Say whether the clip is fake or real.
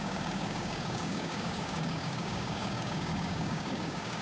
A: fake